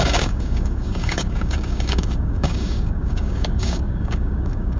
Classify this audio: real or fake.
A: fake